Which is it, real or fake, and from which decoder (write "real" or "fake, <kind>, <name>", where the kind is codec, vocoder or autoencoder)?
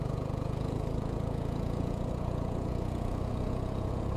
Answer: fake, vocoder, Vocos